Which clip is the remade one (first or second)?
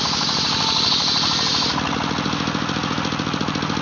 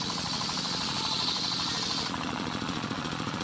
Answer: second